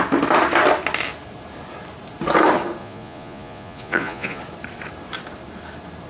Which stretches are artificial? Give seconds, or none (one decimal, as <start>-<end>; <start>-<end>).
2.8-4.4